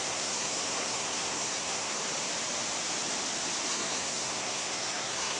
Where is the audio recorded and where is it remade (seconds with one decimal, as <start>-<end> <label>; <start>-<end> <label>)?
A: 0.0-2.0 remade; 2.0-3.7 recorded; 3.7-5.4 remade